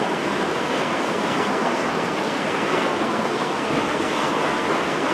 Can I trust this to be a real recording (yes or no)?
no